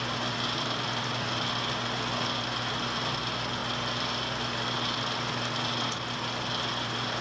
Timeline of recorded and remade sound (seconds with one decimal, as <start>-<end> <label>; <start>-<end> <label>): 0.0-7.2 recorded